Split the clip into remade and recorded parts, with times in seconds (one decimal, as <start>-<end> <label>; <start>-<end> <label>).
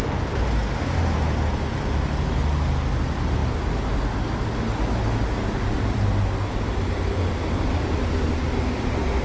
0.0-9.2 recorded